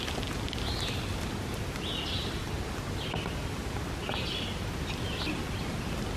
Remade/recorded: recorded